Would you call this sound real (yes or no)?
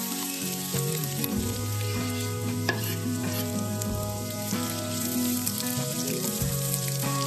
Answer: no